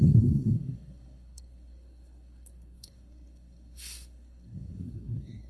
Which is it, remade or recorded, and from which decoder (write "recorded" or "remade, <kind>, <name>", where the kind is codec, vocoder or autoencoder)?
remade, codec, SNAC